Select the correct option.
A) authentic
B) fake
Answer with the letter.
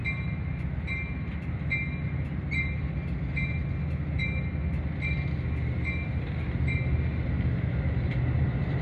A